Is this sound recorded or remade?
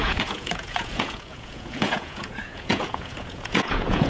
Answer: remade